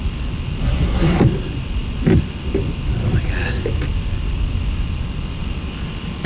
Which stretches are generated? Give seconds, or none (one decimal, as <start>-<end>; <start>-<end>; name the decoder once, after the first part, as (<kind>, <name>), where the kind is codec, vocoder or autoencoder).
0.6-1.2 (codec, SNAC)